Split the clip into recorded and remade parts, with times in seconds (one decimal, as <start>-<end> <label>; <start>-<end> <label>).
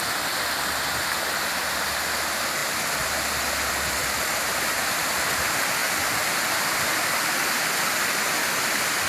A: 0.0-9.1 recorded